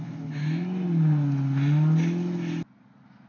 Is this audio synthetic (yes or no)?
no